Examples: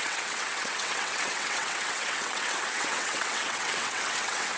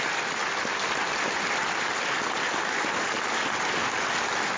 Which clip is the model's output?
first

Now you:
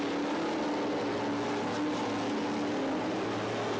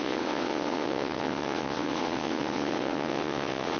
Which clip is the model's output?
second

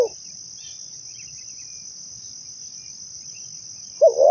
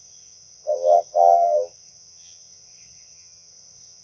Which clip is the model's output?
second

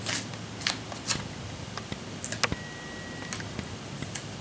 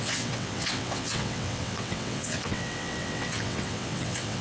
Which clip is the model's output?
second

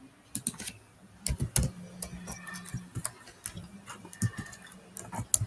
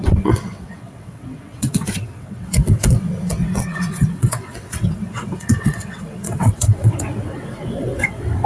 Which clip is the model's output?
second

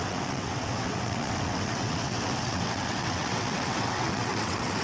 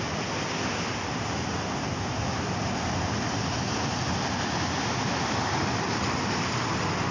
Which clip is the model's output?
first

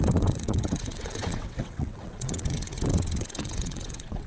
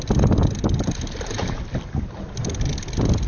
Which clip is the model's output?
first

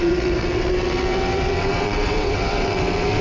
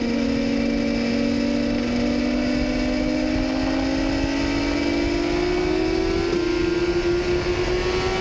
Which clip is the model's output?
first